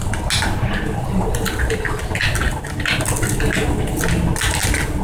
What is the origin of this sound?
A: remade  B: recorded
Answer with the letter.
B